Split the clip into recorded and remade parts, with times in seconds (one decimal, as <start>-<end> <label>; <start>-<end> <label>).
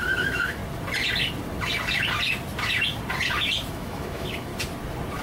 0.0-0.6 remade; 0.6-3.7 recorded; 3.7-4.5 remade; 4.5-5.2 recorded